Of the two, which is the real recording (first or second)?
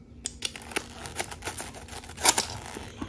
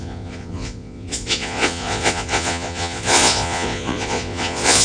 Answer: first